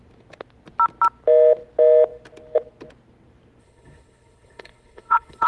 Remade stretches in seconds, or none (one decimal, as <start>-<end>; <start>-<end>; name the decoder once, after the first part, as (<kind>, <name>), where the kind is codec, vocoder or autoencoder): 3.6-5.5 (codec, HILCodec)